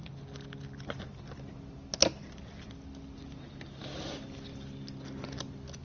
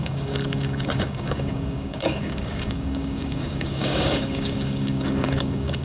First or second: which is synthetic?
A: second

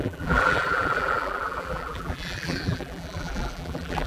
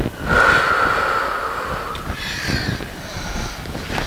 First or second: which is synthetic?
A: first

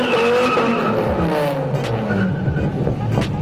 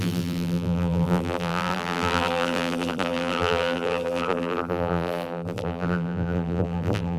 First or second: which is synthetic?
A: second